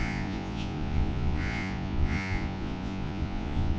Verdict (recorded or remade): remade